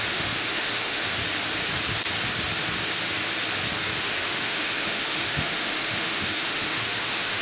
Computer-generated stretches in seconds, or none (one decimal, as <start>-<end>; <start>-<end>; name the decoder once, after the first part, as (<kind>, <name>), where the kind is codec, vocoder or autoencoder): 0.0-1.2 (autoencoder, DAC-VAE); 4.0-7.4